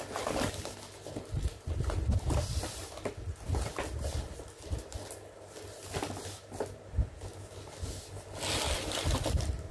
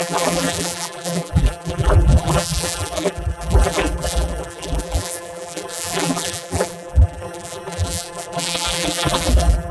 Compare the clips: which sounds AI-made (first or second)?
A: second